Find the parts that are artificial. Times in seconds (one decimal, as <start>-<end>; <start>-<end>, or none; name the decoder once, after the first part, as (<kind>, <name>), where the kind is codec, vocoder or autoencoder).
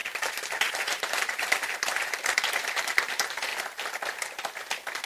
0.0-3.5 (vocoder, BigVGAN v2)